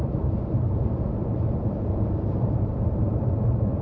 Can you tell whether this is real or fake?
fake